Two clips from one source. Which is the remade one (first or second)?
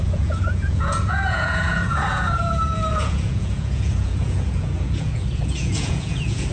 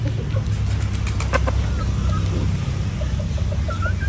first